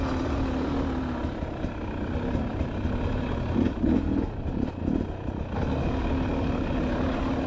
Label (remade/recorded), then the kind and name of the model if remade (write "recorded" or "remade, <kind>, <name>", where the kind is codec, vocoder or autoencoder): recorded